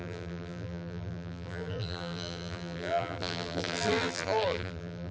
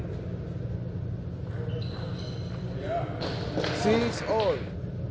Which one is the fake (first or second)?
first